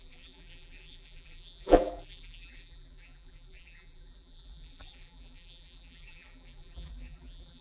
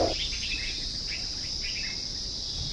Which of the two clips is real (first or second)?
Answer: second